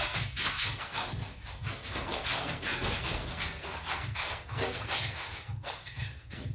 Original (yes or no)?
no